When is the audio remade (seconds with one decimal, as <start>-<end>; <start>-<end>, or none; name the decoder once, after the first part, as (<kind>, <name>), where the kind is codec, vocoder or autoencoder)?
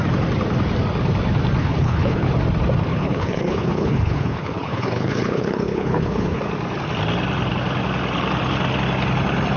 1.6-2.3 (codec, HILCodec); 2.9-6.4